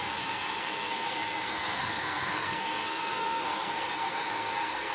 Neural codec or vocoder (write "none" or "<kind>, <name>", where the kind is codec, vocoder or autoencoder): codec, SNAC